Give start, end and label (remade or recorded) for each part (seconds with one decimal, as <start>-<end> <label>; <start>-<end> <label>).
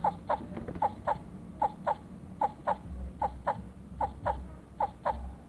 0.0-5.5 recorded